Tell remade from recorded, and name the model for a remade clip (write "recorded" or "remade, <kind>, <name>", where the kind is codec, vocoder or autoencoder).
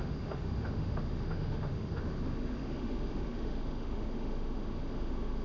remade, autoencoder, DAC-VAE